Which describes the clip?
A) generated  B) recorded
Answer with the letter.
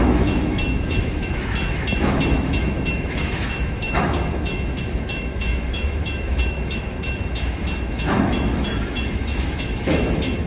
A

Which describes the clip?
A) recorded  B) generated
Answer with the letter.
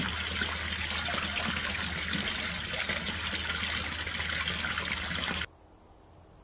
A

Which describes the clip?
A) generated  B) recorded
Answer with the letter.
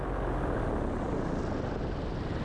B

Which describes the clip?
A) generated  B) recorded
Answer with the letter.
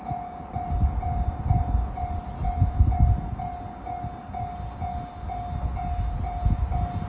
B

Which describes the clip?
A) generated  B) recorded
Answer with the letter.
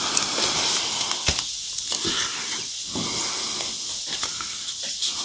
B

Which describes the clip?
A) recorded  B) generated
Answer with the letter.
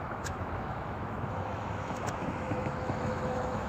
B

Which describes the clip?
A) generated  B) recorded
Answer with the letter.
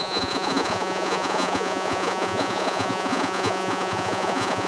A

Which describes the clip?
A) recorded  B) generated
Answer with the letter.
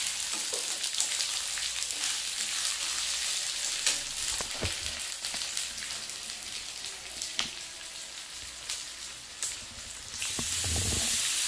A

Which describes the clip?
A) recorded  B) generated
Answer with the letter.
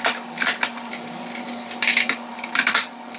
A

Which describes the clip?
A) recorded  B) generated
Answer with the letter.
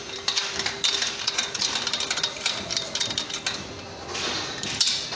B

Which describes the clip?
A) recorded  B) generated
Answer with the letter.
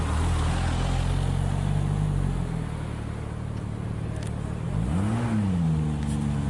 A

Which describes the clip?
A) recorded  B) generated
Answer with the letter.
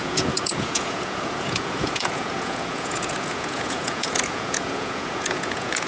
B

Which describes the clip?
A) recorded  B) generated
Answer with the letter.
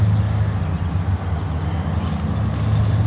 A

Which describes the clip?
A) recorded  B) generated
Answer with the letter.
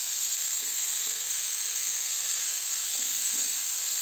B